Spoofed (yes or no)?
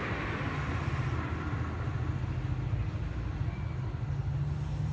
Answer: no